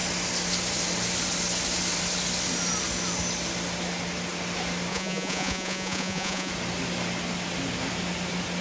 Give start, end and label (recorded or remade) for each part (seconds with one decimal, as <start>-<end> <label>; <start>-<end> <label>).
0.0-4.9 recorded; 4.9-6.5 remade; 6.5-8.6 recorded